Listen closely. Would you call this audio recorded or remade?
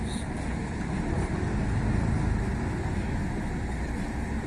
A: recorded